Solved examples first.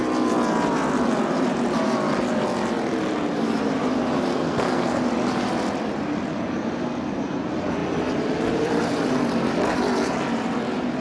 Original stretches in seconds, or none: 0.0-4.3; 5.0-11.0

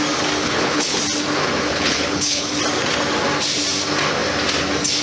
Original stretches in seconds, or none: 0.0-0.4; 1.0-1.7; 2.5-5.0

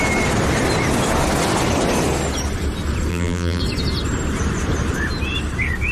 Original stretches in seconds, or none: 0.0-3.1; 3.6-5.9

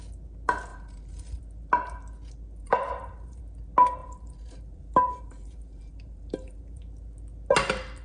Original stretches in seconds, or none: 0.0-0.7; 1.4-2.6; 3.4-4.0; 6.8-8.0

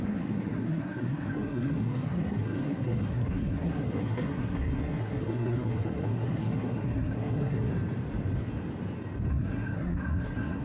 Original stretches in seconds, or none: 7.7-9.3

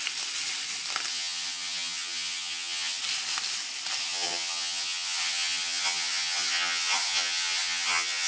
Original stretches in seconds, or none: 0.0-1.1; 3.0-4.0